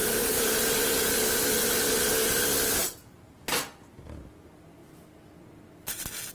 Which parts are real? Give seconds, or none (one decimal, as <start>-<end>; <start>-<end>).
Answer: 1.1-2.8; 3.6-6.3